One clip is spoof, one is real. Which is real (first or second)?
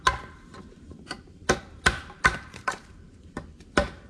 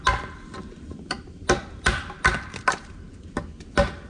second